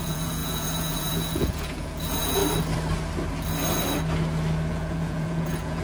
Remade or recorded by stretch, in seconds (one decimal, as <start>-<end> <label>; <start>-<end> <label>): 0.0-2.4 remade; 2.4-4.7 recorded; 4.7-5.8 remade